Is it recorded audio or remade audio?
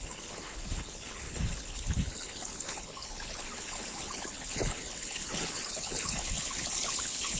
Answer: remade